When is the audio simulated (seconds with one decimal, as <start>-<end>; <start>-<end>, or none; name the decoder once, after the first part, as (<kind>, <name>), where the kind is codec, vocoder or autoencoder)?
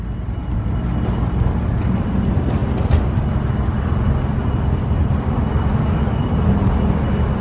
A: 5.7-6.3 (codec, DAC)